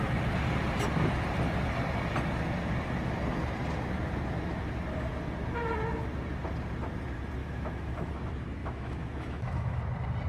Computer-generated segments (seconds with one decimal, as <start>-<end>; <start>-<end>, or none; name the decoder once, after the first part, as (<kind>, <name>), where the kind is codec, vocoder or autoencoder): 7.4-8.1 (autoencoder, DAC-VAE); 8.6-9.8